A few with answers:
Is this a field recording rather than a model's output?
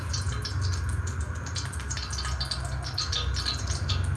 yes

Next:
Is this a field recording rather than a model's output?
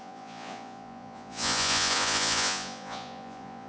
no